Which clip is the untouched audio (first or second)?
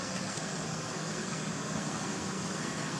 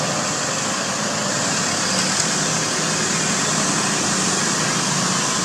second